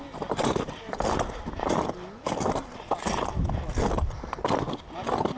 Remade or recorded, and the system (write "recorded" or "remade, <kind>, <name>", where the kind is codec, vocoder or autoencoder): recorded